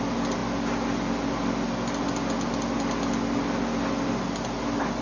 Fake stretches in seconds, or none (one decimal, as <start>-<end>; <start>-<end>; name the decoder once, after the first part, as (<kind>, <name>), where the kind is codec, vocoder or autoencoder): none